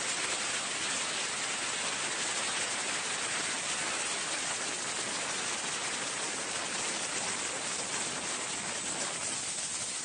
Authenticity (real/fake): real